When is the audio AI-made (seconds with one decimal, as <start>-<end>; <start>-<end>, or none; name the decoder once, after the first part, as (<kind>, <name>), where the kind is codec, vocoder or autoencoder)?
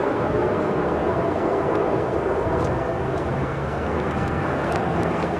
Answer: 0.0-5.4 (codec, SNAC)